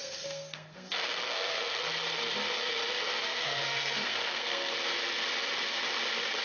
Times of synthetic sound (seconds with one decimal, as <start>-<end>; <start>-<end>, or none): 0.0-1.8; 3.3-4.7